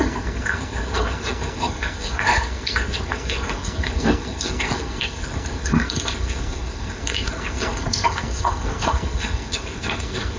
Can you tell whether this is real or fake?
fake